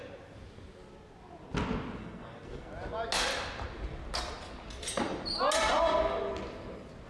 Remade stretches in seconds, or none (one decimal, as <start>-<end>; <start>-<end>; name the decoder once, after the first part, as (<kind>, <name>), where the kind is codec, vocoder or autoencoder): 2.0-2.7 (codec, SNAC)